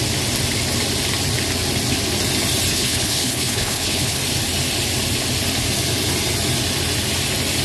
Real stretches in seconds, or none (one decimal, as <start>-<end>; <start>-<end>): 0.0-2.7; 4.2-7.6